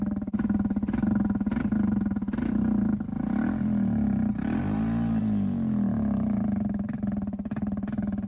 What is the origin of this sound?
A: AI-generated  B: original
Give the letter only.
B